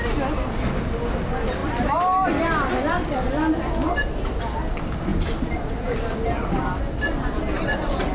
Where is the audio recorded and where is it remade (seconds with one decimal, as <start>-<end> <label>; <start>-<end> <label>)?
0.0-8.1 recorded